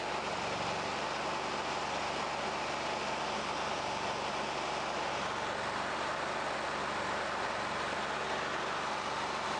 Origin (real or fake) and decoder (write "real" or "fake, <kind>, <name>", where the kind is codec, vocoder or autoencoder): real